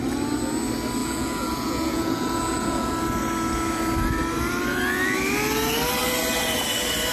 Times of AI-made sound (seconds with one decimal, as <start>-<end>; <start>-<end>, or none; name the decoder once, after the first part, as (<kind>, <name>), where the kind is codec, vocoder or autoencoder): 1.0-2.9 (vocoder, Vocos)